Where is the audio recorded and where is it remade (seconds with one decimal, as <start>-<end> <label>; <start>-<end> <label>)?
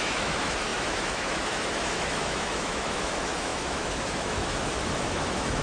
0.0-5.6 remade